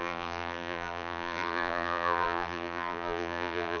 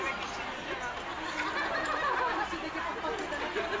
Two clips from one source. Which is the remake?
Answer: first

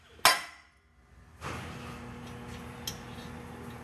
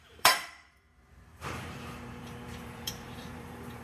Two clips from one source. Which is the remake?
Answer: second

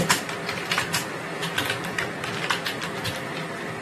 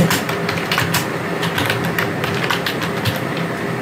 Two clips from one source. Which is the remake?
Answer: first